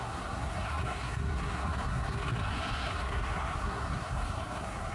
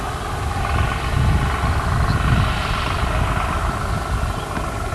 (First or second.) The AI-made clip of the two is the first